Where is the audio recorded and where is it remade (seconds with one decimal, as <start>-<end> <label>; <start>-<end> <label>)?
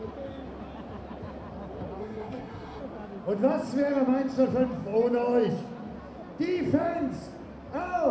0.0-2.0 recorded; 2.0-2.8 remade; 2.8-8.1 recorded